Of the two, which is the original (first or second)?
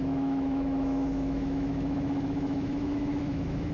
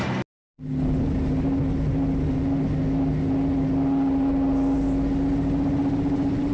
second